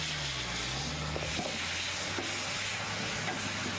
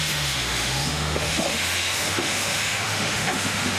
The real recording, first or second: first